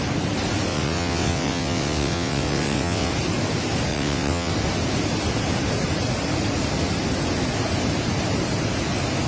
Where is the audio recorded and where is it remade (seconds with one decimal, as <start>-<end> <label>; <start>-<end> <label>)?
0.0-0.7 recorded; 0.7-3.1 remade; 3.1-3.9 recorded; 3.9-4.5 remade; 4.5-9.3 recorded

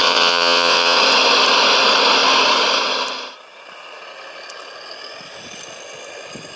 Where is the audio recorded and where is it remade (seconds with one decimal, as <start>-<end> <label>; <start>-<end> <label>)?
0.0-1.0 remade; 1.0-6.6 recorded

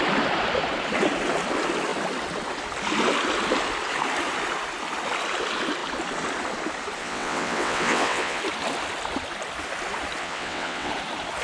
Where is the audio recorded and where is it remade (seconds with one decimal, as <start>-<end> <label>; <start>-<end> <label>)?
0.0-7.0 recorded; 7.0-8.4 remade; 8.4-10.2 recorded; 10.2-10.9 remade; 10.9-11.4 recorded